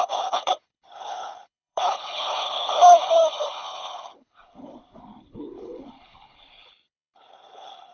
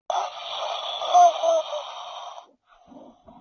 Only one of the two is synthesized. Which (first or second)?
first